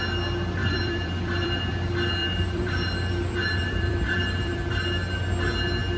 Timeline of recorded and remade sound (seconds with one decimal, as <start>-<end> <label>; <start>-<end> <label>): 0.0-0.6 recorded; 0.6-1.7 remade; 1.7-2.2 recorded; 2.2-4.7 remade; 4.7-6.0 recorded